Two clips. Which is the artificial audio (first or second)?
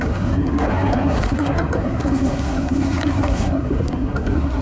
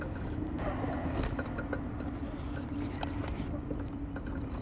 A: first